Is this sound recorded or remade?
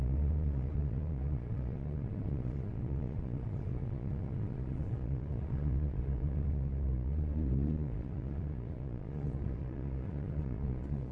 remade